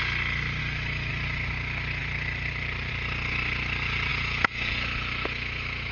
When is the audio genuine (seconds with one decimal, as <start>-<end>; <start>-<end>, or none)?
0.0-0.6; 1.1-4.1